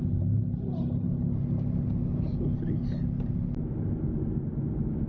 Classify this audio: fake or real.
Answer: real